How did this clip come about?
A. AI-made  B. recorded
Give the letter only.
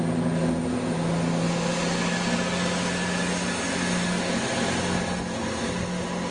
B